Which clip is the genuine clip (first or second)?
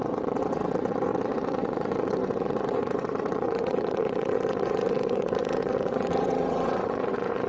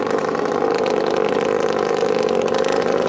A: second